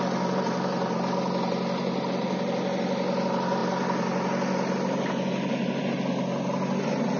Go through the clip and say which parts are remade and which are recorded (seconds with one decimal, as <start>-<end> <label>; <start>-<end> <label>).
0.0-7.2 recorded